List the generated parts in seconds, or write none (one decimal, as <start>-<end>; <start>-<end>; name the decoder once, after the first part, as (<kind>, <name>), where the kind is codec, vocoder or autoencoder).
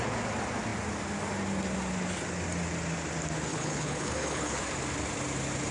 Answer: 3.5-4.6 (codec, HILCodec)